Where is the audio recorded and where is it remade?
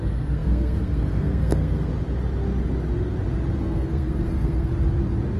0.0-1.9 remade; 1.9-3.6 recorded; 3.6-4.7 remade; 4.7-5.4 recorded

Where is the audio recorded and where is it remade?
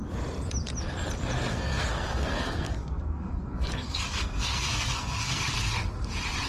0.0-1.5 recorded; 1.5-5.4 remade; 5.4-6.5 recorded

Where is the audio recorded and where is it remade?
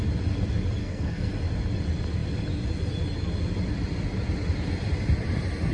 0.0-0.8 recorded; 0.8-1.3 remade; 1.3-5.7 recorded